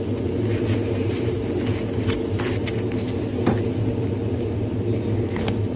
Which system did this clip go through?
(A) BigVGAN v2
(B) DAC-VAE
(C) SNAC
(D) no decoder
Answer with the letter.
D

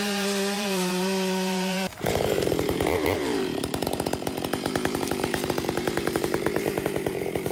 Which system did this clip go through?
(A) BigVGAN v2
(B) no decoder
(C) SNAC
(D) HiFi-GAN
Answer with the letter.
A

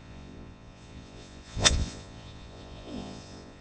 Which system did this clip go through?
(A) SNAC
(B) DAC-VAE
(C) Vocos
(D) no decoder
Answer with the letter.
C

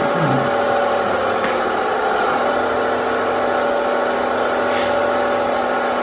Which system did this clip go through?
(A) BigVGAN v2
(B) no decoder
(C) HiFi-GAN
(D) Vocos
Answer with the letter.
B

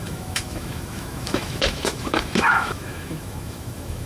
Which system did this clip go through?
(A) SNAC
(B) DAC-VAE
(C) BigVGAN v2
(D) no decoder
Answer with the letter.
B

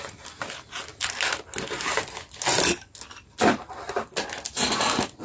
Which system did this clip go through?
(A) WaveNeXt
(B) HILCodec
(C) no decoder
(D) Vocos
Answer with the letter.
C